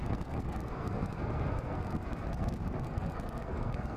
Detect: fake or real fake